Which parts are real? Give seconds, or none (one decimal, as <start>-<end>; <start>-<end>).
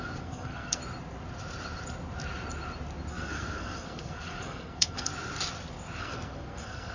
0.8-3.1; 5.1-6.0